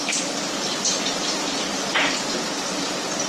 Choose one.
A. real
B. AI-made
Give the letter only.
B